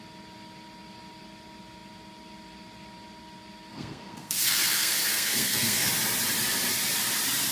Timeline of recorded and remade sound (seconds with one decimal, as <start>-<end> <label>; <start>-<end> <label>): 0.0-3.7 recorded; 3.7-5.9 remade; 5.9-7.5 recorded